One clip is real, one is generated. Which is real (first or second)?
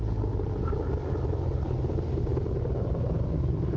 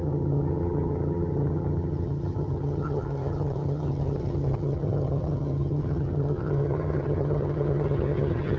first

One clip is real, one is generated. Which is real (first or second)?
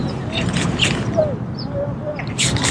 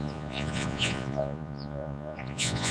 first